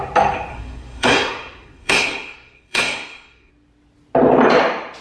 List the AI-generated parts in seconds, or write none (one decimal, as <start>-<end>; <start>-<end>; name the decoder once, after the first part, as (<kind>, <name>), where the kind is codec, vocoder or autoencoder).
0.5-3.5 (codec, SNAC)